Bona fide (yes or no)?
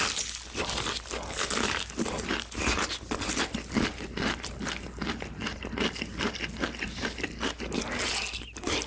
yes